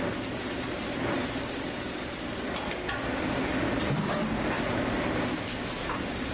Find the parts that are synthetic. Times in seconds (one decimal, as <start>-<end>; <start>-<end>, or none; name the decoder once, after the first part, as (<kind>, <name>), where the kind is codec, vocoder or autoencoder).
none